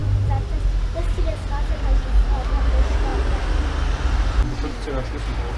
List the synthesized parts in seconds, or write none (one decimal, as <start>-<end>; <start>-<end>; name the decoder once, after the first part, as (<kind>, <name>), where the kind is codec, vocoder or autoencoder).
0.0-2.0 (vocoder, BigVGAN v2)

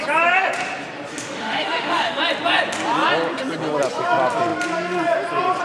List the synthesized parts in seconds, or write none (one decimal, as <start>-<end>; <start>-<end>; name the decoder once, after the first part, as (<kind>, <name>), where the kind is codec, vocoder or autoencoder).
1.1-2.2 (autoencoder, DAC-VAE)

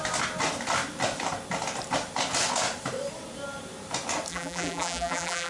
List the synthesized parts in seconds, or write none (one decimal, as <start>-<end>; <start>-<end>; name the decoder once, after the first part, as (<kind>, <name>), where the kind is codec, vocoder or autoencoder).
4.3-5.5 (vocoder, BigVGAN v2)

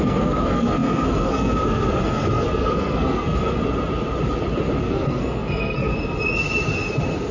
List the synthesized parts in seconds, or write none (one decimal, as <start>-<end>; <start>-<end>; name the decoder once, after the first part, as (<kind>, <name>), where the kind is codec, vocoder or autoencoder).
0.0-3.6 (codec, SNAC); 4.8-5.9